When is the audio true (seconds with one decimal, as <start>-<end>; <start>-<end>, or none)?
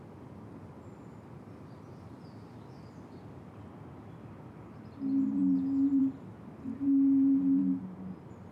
0.0-8.5